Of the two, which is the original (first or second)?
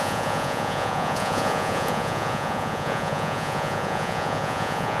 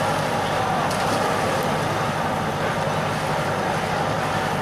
second